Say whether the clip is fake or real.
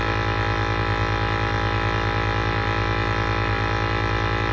real